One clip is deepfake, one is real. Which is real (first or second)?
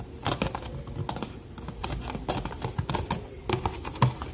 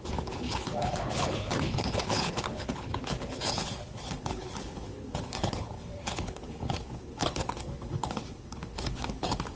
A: first